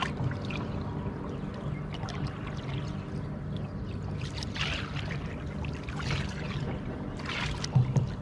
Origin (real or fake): real